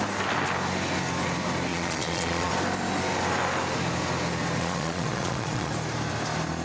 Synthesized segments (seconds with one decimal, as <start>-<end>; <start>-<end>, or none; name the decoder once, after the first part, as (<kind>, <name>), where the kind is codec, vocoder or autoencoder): 1.7-2.5 (vocoder, Vocos); 4.6-5.7

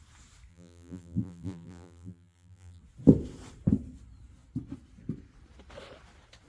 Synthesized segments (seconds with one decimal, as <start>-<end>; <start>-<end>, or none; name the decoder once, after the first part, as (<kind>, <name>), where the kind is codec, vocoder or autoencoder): 0.5-2.8 (vocoder, BigVGAN v2)

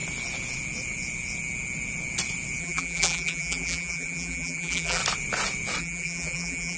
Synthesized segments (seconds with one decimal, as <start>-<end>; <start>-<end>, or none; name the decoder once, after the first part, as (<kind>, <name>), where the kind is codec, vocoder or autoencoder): 2.6-5.0 (vocoder, BigVGAN v2); 5.8-6.8

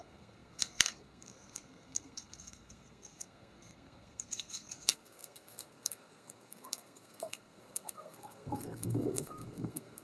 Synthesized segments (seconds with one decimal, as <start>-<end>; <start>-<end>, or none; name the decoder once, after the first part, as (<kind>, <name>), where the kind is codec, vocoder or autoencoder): 0.0-10.0 (codec, SNAC)